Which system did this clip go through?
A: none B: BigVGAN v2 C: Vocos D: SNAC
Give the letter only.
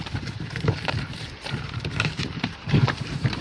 B